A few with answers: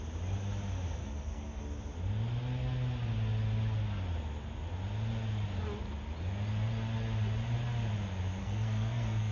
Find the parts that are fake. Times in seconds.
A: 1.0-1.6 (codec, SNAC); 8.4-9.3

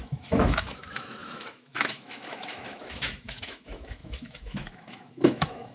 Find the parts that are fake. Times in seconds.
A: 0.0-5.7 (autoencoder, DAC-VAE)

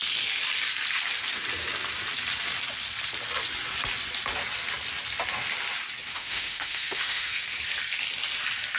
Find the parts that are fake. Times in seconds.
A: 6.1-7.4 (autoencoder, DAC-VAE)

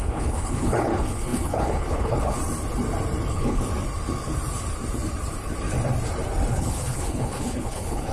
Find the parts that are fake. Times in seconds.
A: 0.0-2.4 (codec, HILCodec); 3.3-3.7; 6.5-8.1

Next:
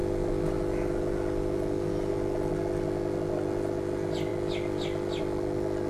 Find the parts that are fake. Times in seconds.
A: none

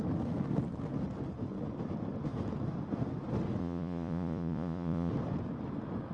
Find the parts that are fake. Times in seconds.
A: 3.6-5.1 (vocoder, Vocos)

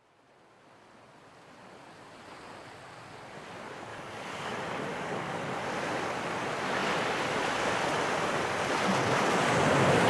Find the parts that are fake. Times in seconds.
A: 3.9-4.5 (codec, DAC); 4.9-5.4

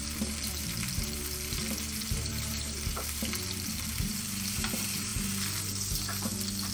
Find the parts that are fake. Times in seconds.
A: 0.0-1.6 (vocoder, BigVGAN v2); 2.3-5.1